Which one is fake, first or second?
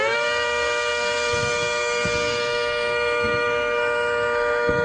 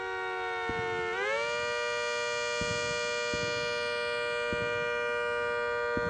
first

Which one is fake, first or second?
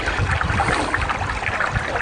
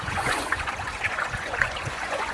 second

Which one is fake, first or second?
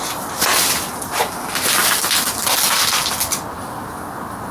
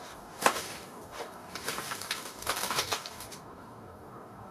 second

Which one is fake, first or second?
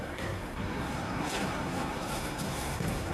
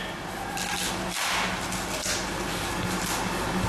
first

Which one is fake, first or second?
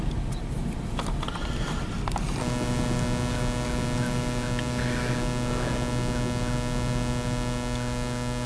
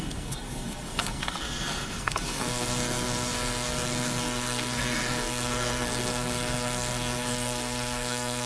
second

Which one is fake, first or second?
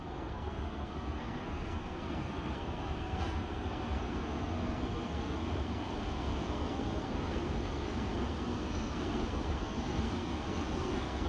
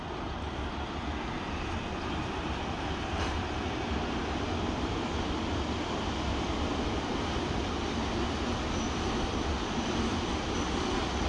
first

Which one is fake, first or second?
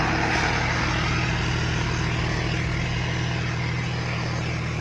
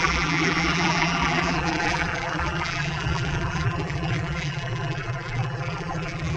second